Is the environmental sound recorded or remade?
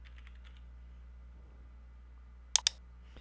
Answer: recorded